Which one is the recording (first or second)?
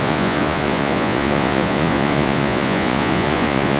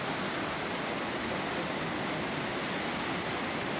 second